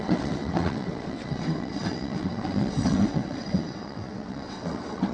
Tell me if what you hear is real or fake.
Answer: fake